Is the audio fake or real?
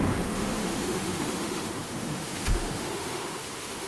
fake